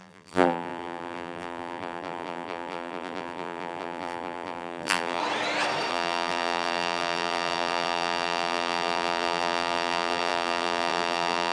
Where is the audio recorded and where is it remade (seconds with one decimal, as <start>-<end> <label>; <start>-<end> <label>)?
0.0-5.2 remade; 5.2-5.9 recorded; 5.9-11.5 remade